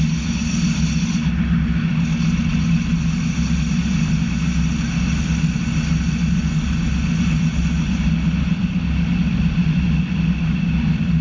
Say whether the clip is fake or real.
real